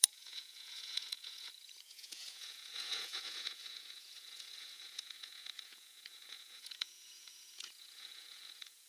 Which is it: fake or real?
fake